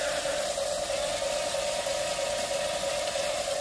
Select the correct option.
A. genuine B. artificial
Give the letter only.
A